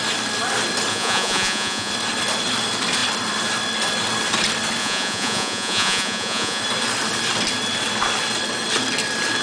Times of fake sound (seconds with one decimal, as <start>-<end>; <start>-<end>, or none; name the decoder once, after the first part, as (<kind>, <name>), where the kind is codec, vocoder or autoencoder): 0.9-1.9 (vocoder, Vocos); 4.8-6.6